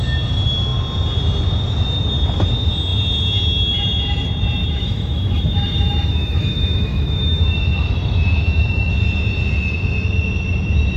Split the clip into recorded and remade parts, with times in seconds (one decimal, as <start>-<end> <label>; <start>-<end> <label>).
0.0-4.6 recorded; 4.6-8.9 remade; 8.9-11.0 recorded